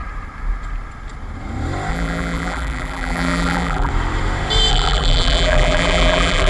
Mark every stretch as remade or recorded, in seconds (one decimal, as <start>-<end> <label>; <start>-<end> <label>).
0.0-1.9 recorded; 1.9-3.9 remade; 3.9-4.7 recorded; 4.7-6.5 remade